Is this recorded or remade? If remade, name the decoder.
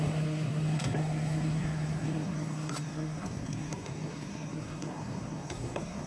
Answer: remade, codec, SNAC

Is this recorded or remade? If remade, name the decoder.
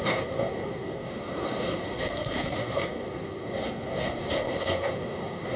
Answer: remade, codec, SNAC